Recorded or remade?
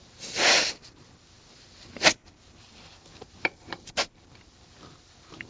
remade